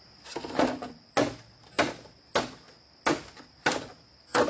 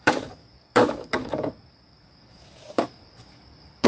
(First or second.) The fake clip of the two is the second